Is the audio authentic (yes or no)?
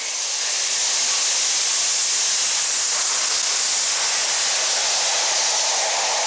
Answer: yes